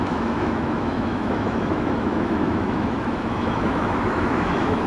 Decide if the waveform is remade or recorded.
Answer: remade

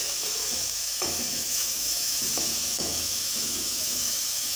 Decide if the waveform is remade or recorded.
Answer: remade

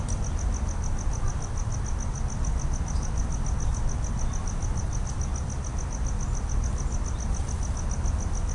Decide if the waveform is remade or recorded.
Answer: recorded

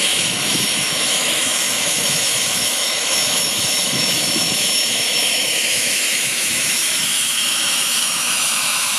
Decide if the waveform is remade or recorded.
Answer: remade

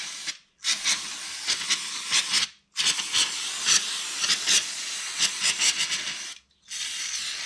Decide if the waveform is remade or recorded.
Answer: recorded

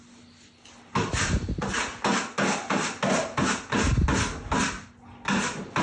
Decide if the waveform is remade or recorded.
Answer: recorded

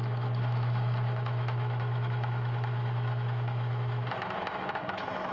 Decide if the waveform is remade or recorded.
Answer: remade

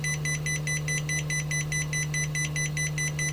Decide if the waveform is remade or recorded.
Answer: recorded